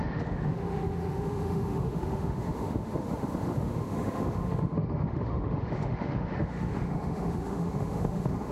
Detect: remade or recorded remade